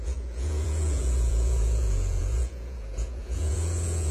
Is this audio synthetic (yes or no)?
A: yes